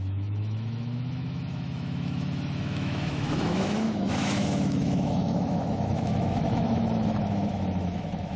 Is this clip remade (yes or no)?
yes